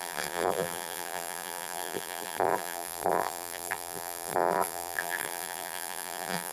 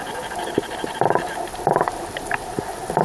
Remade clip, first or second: first